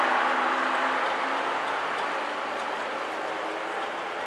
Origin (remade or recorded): recorded